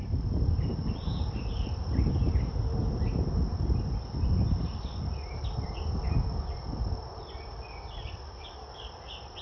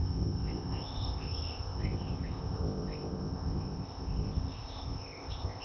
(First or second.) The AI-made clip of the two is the second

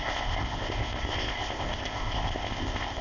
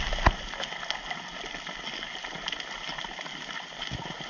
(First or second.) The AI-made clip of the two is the first